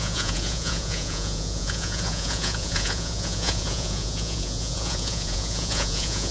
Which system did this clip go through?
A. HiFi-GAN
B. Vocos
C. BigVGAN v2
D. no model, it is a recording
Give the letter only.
B